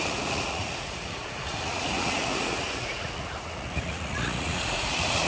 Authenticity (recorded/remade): remade